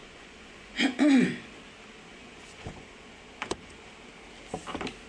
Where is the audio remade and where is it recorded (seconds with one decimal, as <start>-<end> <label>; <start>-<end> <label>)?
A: 0.0-1.4 remade; 1.4-2.1 recorded; 2.1-3.9 remade; 3.9-5.1 recorded